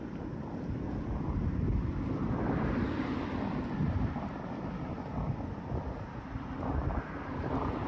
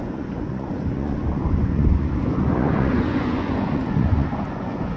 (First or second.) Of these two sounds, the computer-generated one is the second